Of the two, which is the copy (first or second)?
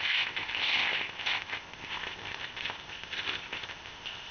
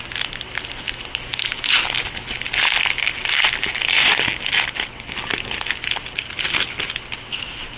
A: first